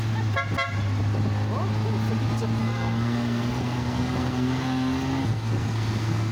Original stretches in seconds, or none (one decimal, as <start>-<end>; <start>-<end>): 0.0-2.6